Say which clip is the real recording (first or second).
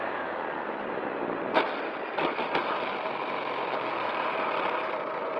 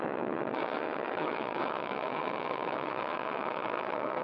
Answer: first